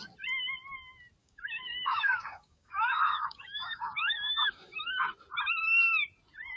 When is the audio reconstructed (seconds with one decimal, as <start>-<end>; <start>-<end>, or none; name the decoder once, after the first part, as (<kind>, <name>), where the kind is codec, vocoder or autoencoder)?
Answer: 1.2-4.8 (codec, DAC)